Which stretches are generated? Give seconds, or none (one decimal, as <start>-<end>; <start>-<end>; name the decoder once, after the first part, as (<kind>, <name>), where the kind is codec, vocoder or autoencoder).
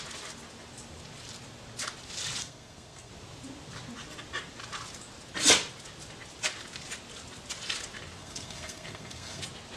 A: 2.4-3.1 (codec, SNAC); 8.2-9.4